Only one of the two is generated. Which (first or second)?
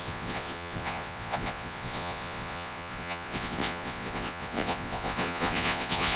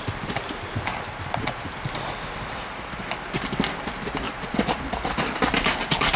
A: first